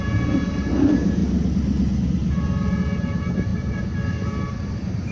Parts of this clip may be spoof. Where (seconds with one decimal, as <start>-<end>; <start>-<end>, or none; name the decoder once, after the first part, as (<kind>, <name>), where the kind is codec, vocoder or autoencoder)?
0.0-1.2 (vocoder, BigVGAN v2); 2.8-3.5; 4.5-5.1